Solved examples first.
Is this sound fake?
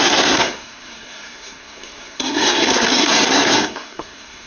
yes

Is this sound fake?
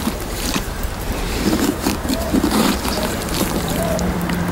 yes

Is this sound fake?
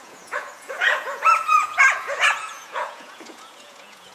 yes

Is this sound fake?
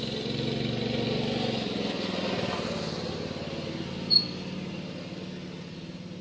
no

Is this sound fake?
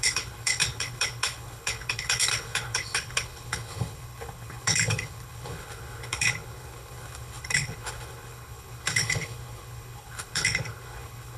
yes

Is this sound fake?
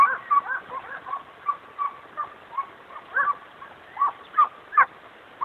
no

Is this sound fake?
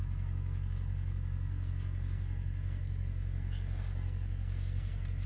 yes